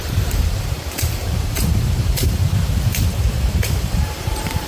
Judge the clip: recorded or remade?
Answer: remade